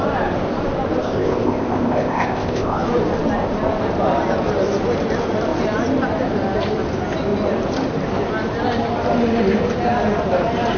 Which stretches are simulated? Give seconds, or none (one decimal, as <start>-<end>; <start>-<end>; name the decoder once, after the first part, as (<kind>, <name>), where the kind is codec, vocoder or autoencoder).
1.0-2.8 (codec, ZipCodec)